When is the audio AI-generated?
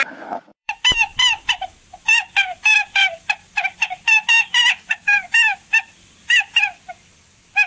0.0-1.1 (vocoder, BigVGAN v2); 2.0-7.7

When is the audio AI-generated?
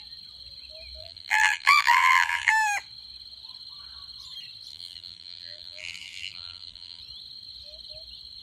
1.0-2.5 (vocoder, BigVGAN v2); 4.7-7.0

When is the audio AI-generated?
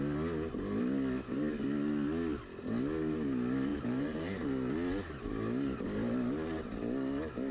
3.7-4.4 (vocoder, BigVGAN v2)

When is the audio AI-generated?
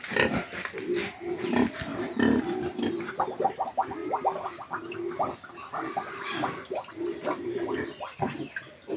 1.9-2.4 (vocoder, BigVGAN v2); 4.0-8.5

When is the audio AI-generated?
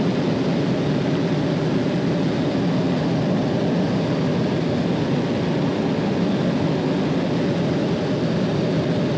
5.7-6.9 (vocoder, BigVGAN v2)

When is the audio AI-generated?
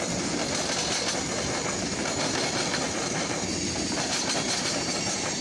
2.0-4.9 (vocoder, BigVGAN v2)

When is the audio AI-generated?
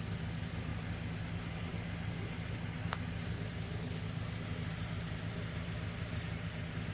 none